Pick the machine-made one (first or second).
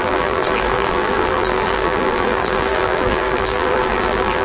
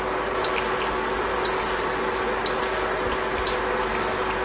first